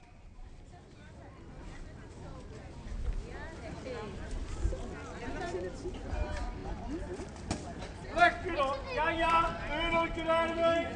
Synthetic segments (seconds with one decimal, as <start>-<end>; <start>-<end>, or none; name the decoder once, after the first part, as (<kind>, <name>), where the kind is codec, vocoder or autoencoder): none